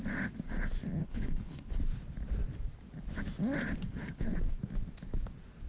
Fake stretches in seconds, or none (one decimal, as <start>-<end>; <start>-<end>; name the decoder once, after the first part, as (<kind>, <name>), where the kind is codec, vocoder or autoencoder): 1.0-1.7 (codec, HILCodec); 3.9-4.4